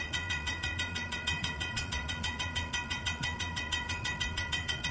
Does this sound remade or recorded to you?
remade